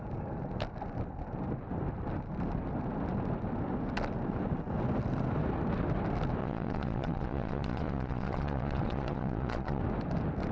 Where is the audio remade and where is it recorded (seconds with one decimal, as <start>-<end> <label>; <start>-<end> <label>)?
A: 0.0-6.4 recorded; 6.4-9.8 remade; 9.8-10.5 recorded